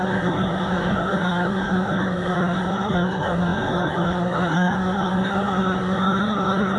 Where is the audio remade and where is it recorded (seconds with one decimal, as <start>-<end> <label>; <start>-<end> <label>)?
0.0-6.8 remade